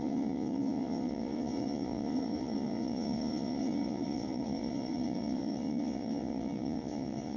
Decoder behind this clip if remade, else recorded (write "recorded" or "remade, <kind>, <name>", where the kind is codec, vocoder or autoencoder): remade, vocoder, Vocos